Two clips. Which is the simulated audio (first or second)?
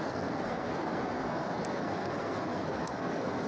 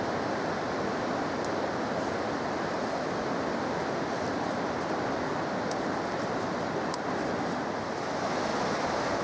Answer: first